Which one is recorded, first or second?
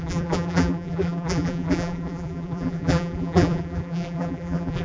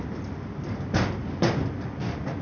second